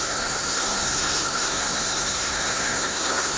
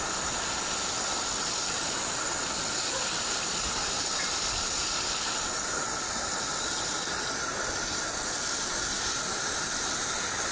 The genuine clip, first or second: second